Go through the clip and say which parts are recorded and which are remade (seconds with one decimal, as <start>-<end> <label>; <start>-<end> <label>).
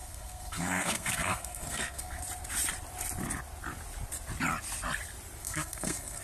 0.0-2.2 remade; 2.2-5.4 recorded; 5.4-6.2 remade